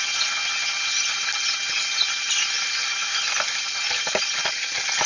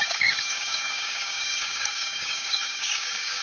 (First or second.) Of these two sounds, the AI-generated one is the second